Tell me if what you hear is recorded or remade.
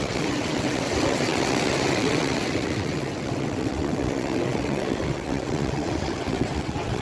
remade